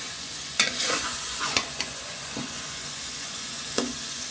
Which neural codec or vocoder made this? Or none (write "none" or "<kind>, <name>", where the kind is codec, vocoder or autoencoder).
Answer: vocoder, Vocos